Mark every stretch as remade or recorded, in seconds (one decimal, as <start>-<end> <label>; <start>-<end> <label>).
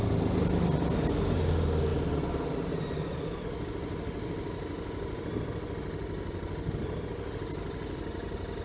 0.0-8.6 recorded